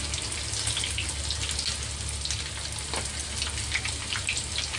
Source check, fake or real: real